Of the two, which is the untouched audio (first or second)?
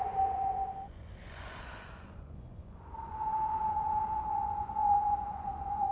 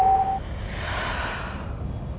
second